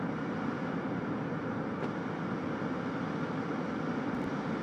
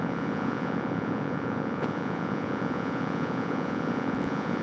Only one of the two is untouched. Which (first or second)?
first